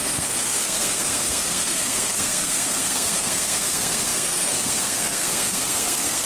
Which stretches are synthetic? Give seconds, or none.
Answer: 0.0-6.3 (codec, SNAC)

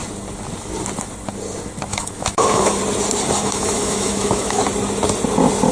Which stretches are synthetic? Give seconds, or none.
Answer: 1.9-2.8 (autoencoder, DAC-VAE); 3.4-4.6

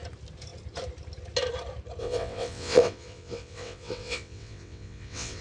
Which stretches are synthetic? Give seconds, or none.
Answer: 2.0-5.4 (vocoder, WaveNeXt)